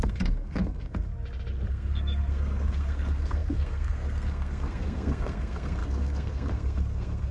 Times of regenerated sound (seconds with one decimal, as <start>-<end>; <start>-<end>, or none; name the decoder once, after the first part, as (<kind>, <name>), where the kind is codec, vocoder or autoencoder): 0.0-1.1 (codec, SNAC); 1.7-7.3